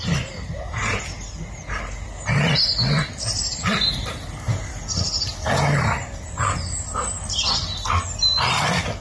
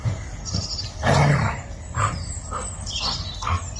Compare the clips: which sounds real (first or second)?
first